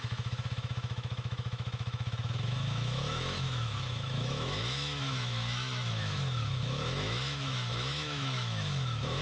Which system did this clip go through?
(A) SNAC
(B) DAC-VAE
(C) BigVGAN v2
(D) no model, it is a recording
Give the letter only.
B